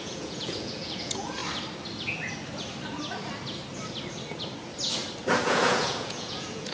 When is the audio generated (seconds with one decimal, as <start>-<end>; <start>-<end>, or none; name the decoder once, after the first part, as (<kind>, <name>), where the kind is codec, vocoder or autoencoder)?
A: 0.0-1.4 (vocoder, Vocos); 5.4-6.7